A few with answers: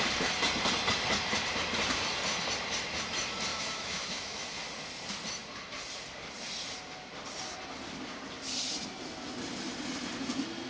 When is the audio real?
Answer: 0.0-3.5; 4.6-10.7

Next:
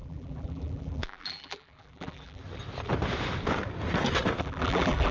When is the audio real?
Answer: 2.4-4.4